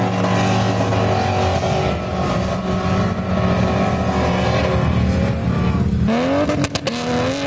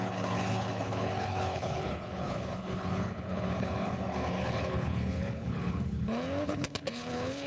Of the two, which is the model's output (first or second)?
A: second